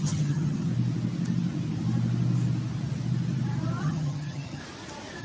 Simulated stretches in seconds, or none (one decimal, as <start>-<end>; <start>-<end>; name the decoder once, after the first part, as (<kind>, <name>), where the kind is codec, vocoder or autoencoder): 0.0-0.7 (vocoder, HiFi-GAN); 3.8-4.6